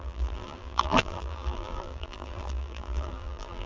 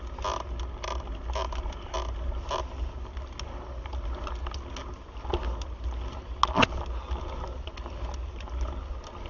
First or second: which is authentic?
second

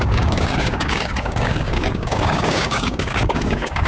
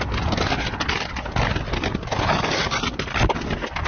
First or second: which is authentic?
second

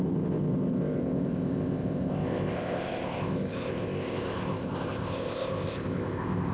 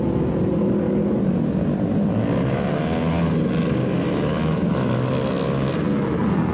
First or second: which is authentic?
second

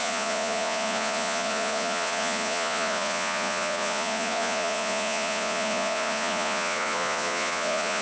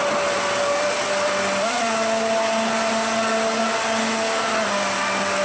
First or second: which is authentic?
second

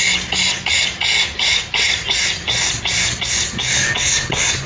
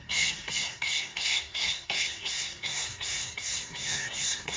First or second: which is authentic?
first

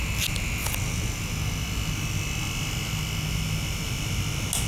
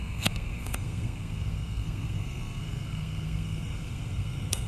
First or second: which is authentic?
first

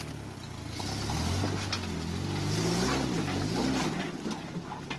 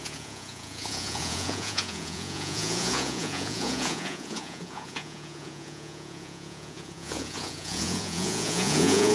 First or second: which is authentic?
first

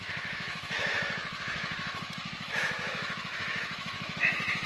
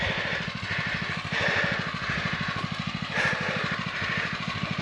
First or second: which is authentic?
second